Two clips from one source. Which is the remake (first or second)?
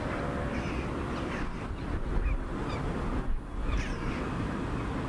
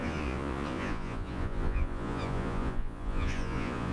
second